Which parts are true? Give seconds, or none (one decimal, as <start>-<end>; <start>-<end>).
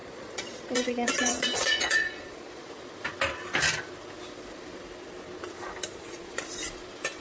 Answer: 2.7-5.9; 6.4-7.2